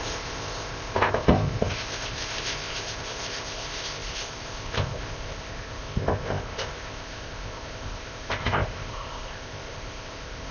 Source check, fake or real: fake